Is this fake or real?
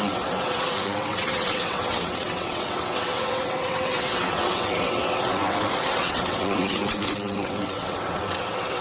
fake